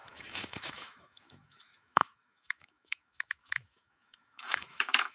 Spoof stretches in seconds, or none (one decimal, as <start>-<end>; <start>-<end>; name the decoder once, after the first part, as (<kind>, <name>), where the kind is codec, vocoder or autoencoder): 0.0-5.1 (autoencoder, DAC-VAE)